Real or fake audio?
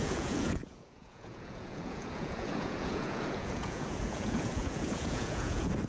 fake